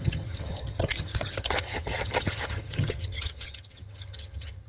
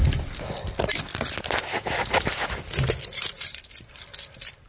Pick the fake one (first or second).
first